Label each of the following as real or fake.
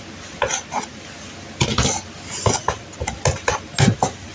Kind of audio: real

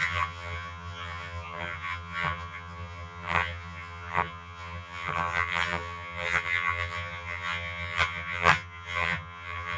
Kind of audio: fake